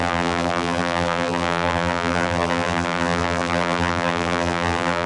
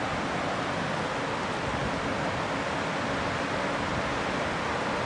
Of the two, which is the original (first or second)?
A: second